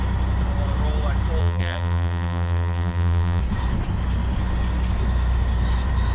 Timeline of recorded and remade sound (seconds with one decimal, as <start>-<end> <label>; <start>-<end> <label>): 0.0-1.4 recorded; 1.4-3.4 remade; 3.4-6.1 recorded